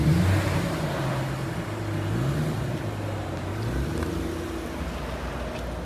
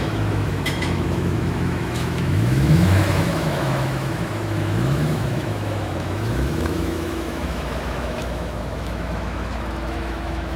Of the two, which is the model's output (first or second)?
second